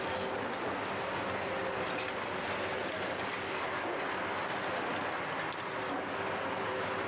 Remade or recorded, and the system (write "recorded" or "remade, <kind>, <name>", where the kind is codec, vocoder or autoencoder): recorded